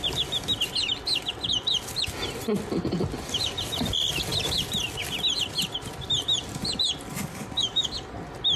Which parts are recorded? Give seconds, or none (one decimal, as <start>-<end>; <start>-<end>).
0.0-7.2; 7.9-8.6